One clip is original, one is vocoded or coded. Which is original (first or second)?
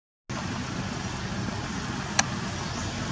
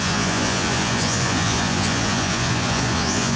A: first